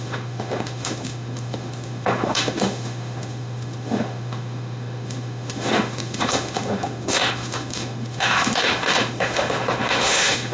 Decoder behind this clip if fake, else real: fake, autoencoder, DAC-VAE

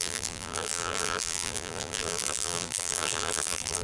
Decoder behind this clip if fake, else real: fake, vocoder, BigVGAN v2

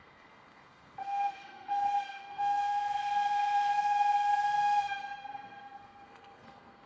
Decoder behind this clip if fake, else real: fake, codec, SNAC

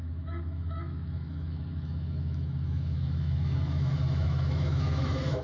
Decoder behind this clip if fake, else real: fake, autoencoder, DAC-VAE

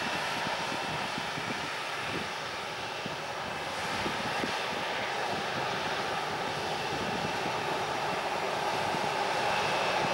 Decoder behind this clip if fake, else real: real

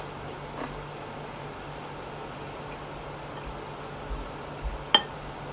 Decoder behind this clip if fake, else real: real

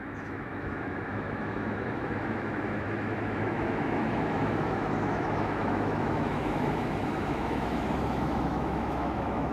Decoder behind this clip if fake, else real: fake, autoencoder, DAC-VAE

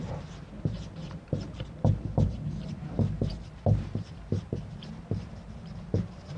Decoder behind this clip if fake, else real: fake, vocoder, BigVGAN v2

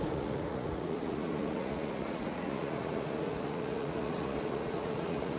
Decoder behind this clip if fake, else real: fake, vocoder, Vocos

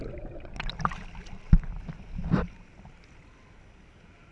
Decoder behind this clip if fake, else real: real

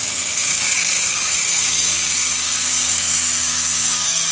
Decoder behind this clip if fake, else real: fake, codec, DAC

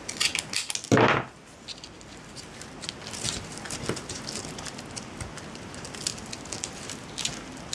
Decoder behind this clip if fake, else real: real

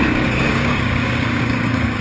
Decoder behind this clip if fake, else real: fake, codec, DAC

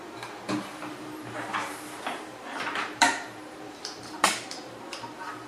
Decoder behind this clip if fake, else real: fake, vocoder, BigVGAN v2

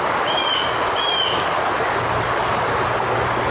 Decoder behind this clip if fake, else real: real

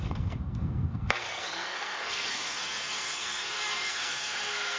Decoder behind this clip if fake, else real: fake, codec, SNAC